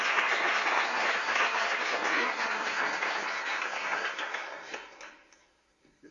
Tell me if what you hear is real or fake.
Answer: fake